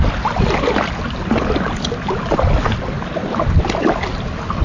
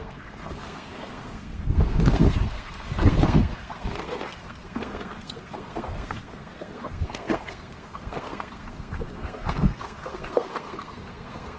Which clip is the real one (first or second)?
first